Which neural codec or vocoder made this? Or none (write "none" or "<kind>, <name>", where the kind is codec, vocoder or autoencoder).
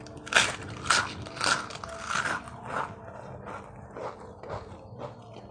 none